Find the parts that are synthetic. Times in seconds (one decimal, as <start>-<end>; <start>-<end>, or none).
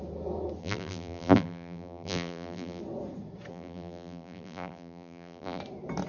0.6-2.8; 3.5-5.6